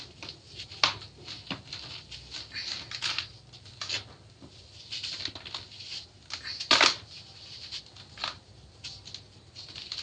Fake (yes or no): no